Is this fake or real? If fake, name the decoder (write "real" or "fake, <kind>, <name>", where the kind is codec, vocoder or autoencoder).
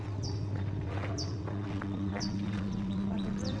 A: fake, vocoder, WaveNeXt